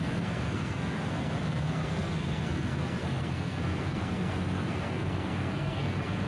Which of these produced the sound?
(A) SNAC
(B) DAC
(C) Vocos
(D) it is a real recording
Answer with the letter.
A